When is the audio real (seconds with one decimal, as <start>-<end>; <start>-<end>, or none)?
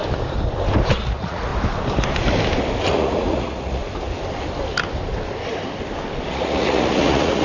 0.0-1.0; 1.5-2.9; 3.8-6.3